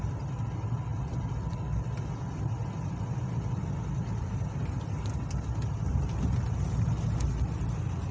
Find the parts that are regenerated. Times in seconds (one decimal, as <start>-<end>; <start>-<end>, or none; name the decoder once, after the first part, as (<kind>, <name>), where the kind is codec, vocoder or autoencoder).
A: none